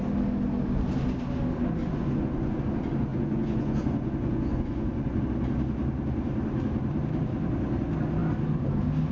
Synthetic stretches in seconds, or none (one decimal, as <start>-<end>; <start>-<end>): 1.8-2.6; 3.1-5.2